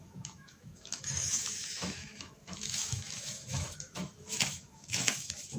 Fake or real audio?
fake